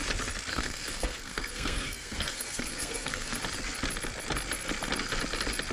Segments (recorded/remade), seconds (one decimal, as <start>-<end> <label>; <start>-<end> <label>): 0.0-0.5 recorded; 0.5-3.4 remade; 3.4-5.7 recorded